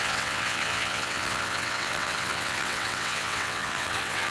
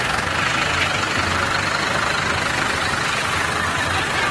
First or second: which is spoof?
first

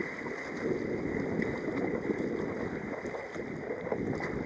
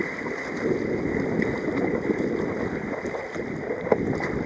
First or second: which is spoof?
second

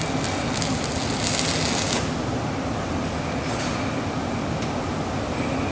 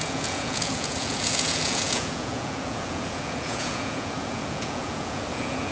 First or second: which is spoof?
second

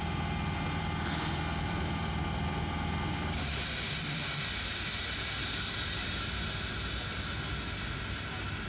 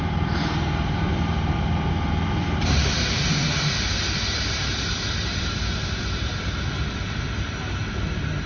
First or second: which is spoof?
second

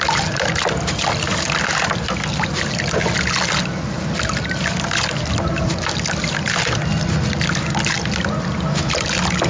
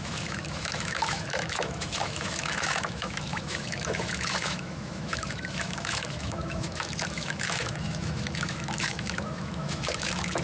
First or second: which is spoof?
second